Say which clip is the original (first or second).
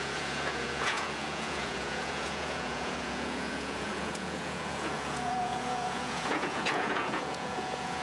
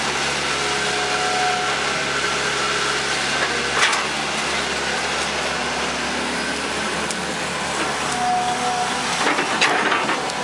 second